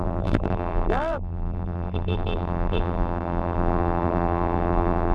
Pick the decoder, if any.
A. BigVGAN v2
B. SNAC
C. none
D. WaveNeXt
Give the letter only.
A